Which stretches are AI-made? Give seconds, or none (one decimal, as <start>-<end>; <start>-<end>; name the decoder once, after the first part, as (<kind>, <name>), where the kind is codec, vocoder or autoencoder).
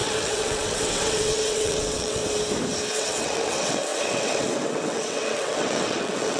0.0-2.2 (vocoder, WaveNeXt); 2.9-6.4